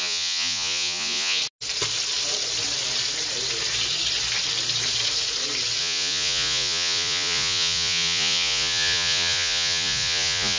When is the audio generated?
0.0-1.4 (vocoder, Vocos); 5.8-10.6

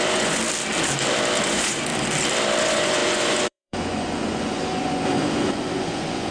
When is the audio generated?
0.0-0.4 (vocoder, Vocos); 1.4-1.9; 2.6-6.3